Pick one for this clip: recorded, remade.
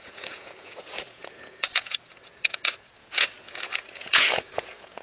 remade